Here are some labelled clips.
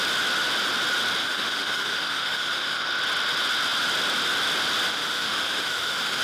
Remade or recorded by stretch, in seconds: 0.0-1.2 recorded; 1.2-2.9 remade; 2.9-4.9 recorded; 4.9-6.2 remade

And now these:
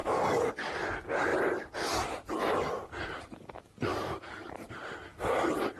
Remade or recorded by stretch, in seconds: 0.0-0.5 remade; 0.5-3.9 recorded; 3.9-4.5 remade; 4.5-5.8 recorded

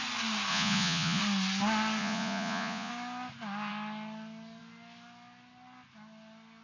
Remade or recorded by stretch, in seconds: 0.0-0.5 recorded; 0.5-1.2 remade; 1.2-2.0 recorded; 2.0-2.9 remade; 2.9-6.6 recorded

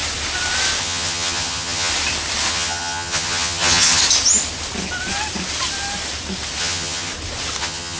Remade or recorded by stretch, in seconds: 0.0-0.8 recorded; 0.8-1.9 remade; 1.9-2.5 recorded; 2.5-4.0 remade; 4.0-6.6 recorded; 6.6-7.1 remade; 7.1-7.6 recorded; 7.6-8.0 remade

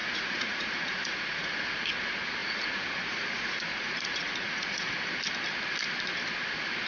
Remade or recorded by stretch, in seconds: 0.0-1.8 remade; 1.8-2.4 recorded; 2.4-4.9 remade; 4.9-6.9 recorded

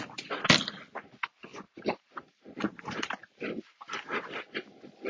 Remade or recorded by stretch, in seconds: 0.0-1.5 recorded; 1.5-2.7 remade; 2.7-3.2 recorded; 3.2-3.8 remade; 3.8-5.1 recorded

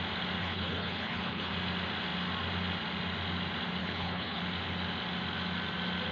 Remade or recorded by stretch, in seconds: 0.0-0.4 recorded; 0.4-1.5 remade; 1.5-3.8 recorded; 3.8-4.4 remade; 4.4-6.1 recorded

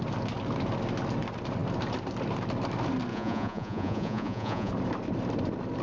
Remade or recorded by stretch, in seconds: 0.0-3.1 recorded; 3.1-4.7 remade; 4.7-5.8 recorded